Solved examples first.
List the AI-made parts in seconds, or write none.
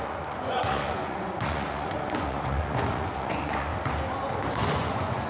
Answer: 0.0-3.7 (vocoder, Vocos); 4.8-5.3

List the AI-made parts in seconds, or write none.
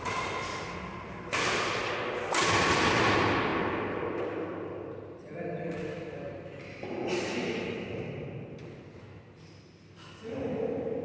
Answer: none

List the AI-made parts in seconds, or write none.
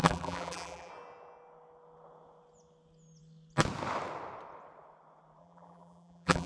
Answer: 0.0-0.9 (vocoder, BigVGAN v2); 5.4-6.5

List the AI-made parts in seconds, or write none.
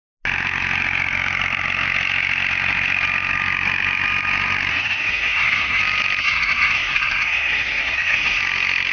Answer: 4.7-5.8 (codec, SNAC); 6.2-8.4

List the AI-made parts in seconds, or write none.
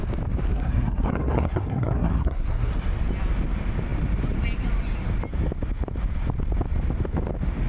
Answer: 0.5-2.7 (codec, SNAC)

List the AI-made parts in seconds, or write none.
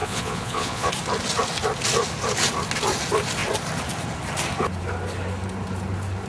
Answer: 0.0-0.9 (vocoder, Vocos)